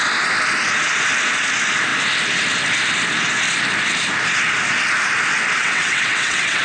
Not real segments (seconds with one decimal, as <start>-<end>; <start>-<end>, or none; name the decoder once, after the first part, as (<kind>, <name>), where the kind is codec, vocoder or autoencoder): 5.6-6.6 (vocoder, WaveNeXt)